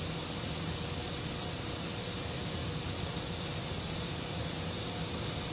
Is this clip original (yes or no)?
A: yes